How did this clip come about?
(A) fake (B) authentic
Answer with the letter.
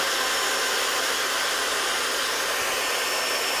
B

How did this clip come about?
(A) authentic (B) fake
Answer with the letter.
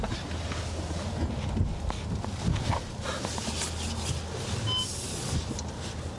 A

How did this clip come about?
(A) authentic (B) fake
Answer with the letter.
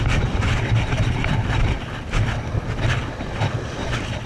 A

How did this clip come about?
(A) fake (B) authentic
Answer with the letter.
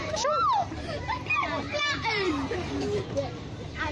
A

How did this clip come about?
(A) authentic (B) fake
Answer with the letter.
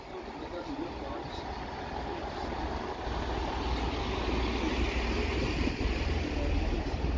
A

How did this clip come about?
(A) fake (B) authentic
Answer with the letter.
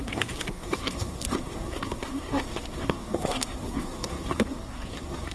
A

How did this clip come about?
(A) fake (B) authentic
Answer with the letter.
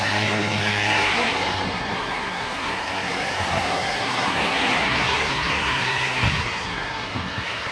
A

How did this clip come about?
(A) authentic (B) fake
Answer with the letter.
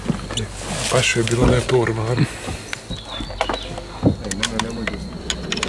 A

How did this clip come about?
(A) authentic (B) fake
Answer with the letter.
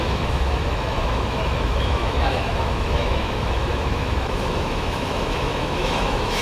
B